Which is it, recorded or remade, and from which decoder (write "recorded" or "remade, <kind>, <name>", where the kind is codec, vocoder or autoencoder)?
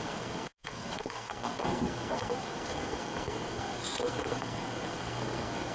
remade, codec, SNAC